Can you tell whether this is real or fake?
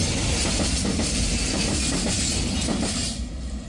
real